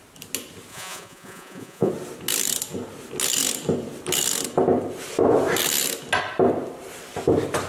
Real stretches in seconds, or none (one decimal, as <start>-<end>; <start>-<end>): 0.0-0.7; 1.9-7.7